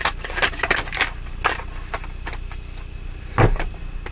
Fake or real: real